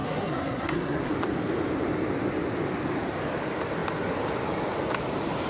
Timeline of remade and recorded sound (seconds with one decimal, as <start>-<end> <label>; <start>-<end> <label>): 0.0-1.1 remade; 1.1-5.5 recorded